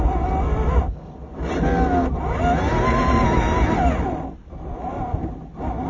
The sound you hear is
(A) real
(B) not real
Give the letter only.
A